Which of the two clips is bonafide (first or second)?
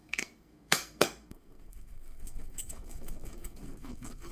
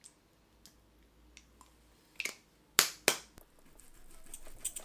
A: second